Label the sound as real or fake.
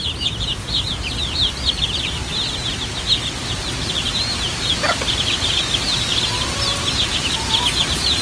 real